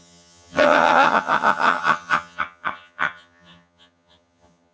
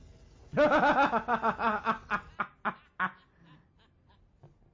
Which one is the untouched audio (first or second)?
second